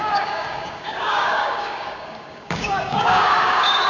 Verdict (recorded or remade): remade